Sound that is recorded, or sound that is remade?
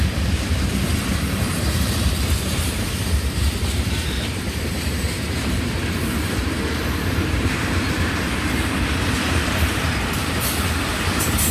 remade